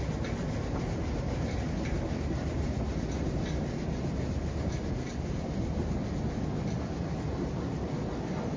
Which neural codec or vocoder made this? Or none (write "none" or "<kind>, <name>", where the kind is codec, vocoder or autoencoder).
none